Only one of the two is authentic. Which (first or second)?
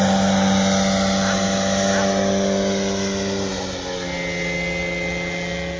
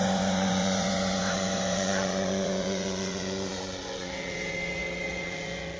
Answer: first